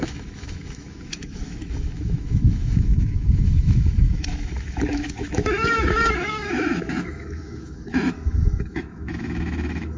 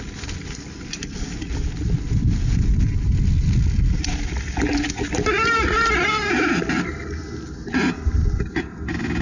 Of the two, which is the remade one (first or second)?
first